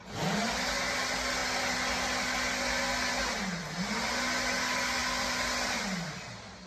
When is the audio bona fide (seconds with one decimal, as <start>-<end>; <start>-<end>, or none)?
0.0-6.7